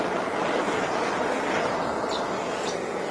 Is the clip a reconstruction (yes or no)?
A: no